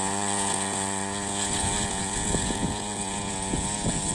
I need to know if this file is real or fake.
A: fake